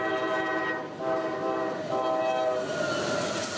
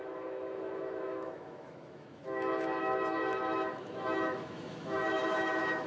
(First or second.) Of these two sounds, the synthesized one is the second